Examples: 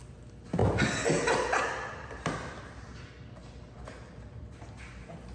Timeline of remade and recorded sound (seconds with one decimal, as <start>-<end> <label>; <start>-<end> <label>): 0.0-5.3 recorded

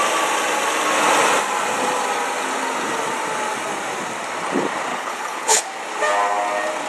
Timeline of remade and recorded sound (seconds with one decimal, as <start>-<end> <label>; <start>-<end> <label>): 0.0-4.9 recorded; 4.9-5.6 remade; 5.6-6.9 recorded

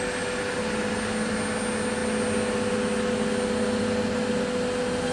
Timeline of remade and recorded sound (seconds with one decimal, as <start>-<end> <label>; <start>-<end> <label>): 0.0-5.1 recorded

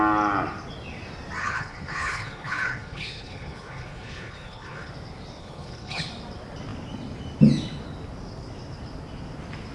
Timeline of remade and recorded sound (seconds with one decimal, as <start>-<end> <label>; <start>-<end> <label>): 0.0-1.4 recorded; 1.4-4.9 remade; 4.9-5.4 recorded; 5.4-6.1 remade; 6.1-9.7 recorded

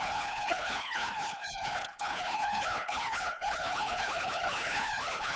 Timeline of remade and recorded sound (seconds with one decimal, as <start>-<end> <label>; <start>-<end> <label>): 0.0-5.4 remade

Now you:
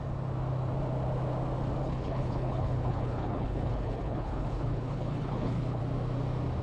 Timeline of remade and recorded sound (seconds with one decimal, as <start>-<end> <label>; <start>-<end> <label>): 0.0-1.8 recorded; 1.8-5.8 remade; 5.8-6.6 recorded

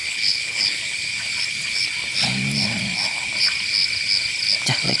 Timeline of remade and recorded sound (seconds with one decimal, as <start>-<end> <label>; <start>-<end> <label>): 0.0-0.8 remade; 0.8-5.0 recorded

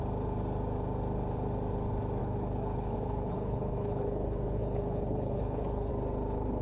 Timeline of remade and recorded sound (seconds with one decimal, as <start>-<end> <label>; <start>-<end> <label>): 0.0-2.2 recorded; 2.2-5.9 remade; 5.9-6.6 recorded